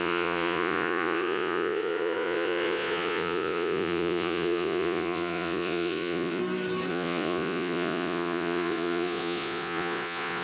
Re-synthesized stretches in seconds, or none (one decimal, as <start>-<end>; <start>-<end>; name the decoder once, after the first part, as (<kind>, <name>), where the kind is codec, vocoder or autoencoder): 0.0-6.4 (vocoder, Vocos); 6.9-10.4